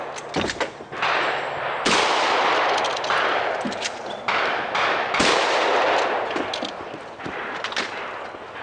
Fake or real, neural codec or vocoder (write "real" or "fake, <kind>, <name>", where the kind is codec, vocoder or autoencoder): real